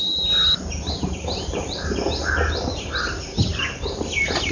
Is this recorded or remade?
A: recorded